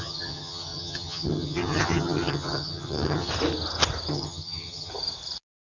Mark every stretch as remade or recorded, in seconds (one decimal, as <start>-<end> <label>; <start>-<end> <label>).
0.0-3.3 remade; 3.3-4.1 recorded; 4.1-4.9 remade; 4.9-5.6 recorded